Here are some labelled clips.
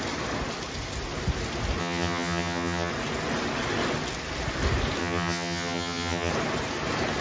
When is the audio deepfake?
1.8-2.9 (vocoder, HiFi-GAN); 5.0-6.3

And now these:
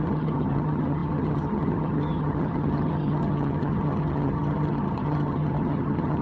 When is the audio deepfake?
0.0-6.2 (vocoder, HiFi-GAN)

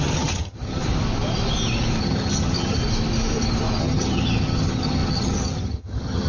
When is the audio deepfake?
0.0-0.8 (vocoder, HiFi-GAN); 2.0-2.8; 3.8-6.3

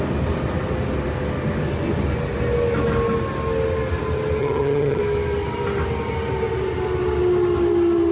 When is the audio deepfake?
4.4-5.0 (vocoder, HiFi-GAN)

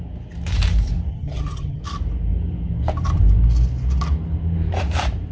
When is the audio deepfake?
1.1-1.8 (vocoder, HiFi-GAN)

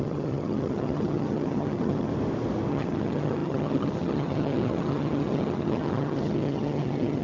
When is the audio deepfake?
0.0-2.1 (vocoder, HiFi-GAN); 2.7-7.2

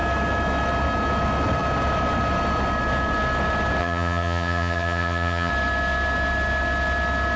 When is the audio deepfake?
3.8-5.5 (vocoder, HiFi-GAN)